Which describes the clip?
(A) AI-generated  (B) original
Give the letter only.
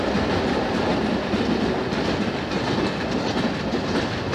B